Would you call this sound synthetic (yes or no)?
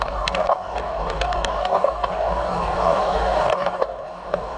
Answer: yes